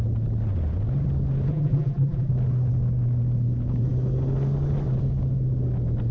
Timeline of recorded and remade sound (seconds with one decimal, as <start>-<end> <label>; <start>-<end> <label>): 0.0-1.5 recorded; 1.5-2.3 remade; 2.3-6.1 recorded